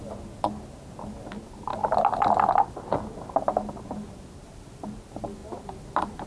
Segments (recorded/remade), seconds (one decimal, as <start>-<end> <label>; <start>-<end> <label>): 0.0-1.7 recorded; 1.7-3.8 remade; 3.8-5.4 recorded; 5.4-6.3 remade